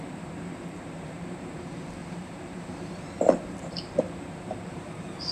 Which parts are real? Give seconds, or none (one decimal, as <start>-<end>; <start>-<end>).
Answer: none